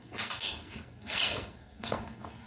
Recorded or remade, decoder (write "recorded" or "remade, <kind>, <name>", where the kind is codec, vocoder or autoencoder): remade, codec, SNAC